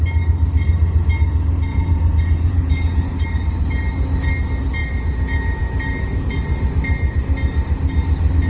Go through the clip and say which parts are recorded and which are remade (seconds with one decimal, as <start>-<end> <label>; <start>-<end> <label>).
0.0-1.7 recorded; 1.7-3.1 remade; 3.1-4.8 recorded; 4.8-6.3 remade; 6.3-8.5 recorded